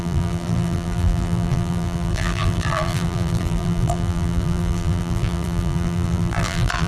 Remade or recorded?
remade